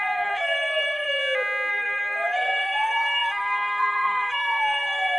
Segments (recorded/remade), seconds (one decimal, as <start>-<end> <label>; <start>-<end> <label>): 0.0-1.2 remade; 1.2-1.7 recorded; 1.7-5.2 remade